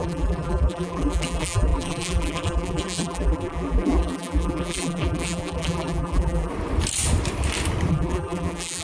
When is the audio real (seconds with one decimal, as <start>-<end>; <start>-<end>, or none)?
6.5-7.9